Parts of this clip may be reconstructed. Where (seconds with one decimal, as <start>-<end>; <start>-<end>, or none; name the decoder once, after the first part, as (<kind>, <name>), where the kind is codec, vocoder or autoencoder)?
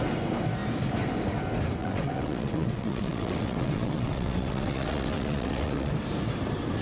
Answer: 1.8-5.9 (vocoder, WaveNeXt)